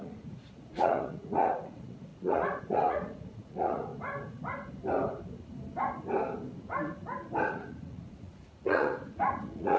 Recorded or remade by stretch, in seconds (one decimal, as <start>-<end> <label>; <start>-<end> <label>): 0.0-3.9 remade; 3.9-7.5 recorded; 7.5-9.8 remade